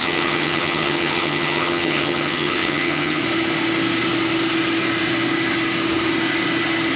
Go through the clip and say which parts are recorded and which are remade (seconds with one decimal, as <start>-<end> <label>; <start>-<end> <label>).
0.0-3.2 remade; 3.2-7.0 recorded